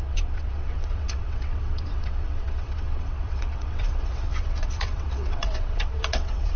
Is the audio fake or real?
fake